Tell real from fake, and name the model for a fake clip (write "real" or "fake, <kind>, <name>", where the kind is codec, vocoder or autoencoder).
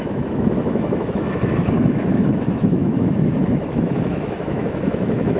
fake, autoencoder, DAC-VAE